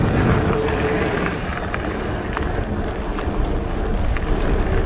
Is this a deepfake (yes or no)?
no